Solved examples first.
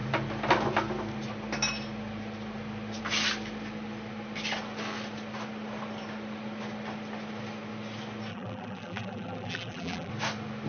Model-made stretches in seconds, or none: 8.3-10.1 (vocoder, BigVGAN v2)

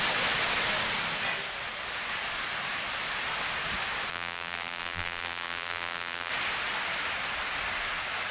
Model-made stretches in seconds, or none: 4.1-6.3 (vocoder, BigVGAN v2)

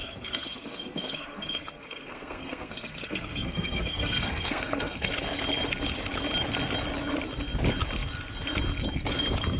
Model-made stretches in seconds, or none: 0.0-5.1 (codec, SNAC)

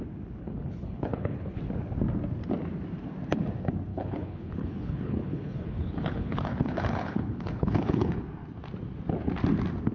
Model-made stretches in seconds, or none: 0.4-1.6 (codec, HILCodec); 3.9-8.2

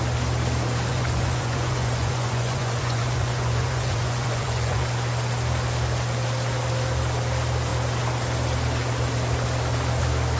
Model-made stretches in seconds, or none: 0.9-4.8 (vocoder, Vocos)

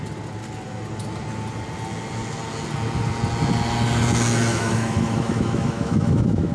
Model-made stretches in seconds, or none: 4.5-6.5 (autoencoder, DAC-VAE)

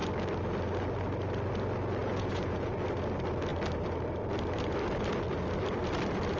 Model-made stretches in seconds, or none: 2.0-2.7 (vocoder, Vocos)

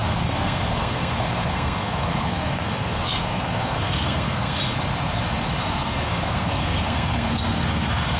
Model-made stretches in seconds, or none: 0.0-4.6 (codec, SNAC); 5.6-8.2